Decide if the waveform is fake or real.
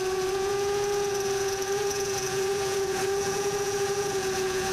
fake